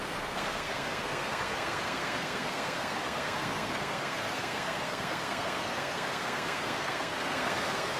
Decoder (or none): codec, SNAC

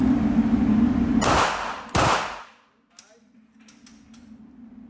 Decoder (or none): none